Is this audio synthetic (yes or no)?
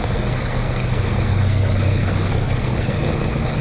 yes